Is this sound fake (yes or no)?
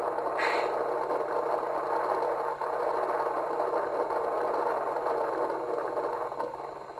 no